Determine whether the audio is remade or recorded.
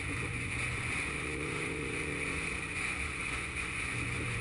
remade